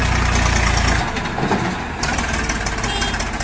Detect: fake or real real